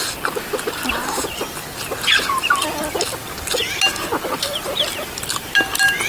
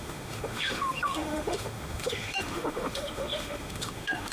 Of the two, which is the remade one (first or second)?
second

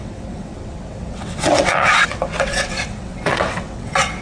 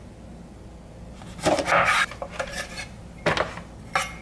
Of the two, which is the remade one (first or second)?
first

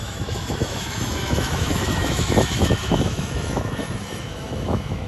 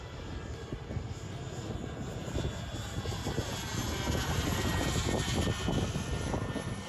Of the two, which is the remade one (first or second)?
first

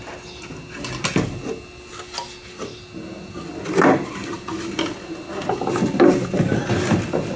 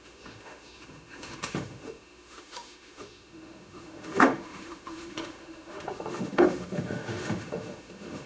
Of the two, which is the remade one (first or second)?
second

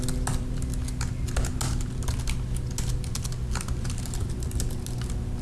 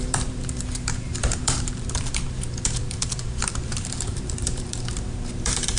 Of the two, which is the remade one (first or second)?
second